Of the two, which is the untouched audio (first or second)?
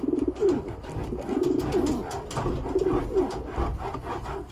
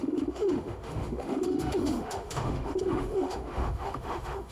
first